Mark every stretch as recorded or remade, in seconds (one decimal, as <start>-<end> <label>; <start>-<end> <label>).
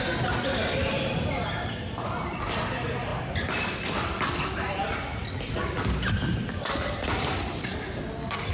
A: 0.0-8.5 recorded